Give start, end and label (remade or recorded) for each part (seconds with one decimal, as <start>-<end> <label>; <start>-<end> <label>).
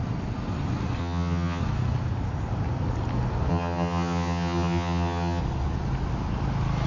0.0-1.0 recorded; 1.0-1.6 remade; 1.6-3.5 recorded; 3.5-5.4 remade; 5.4-6.9 recorded